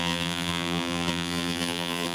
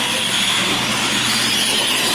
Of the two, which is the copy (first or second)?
first